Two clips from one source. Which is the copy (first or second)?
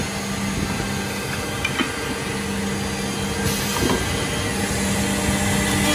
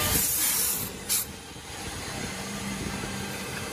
second